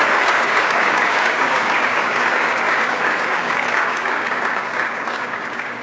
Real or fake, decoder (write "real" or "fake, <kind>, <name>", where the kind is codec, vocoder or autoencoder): fake, codec, DAC